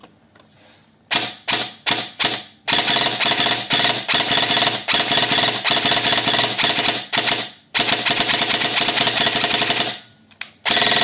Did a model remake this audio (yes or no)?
no